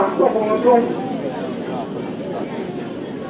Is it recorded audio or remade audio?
recorded